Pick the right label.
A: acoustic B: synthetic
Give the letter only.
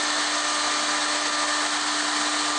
A